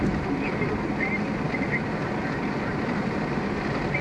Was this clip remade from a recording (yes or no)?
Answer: no